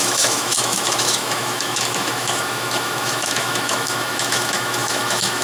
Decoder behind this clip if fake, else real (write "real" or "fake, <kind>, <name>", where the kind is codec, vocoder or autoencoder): fake, autoencoder, DAC-VAE